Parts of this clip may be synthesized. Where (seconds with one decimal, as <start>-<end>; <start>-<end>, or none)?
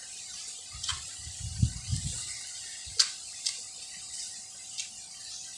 none